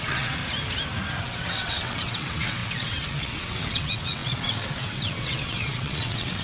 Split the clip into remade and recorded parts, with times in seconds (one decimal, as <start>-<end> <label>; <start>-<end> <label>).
0.0-0.4 remade; 0.4-1.2 recorded; 1.2-6.4 remade